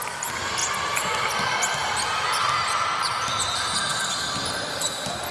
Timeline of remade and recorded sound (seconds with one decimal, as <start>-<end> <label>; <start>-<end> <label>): 0.0-5.3 recorded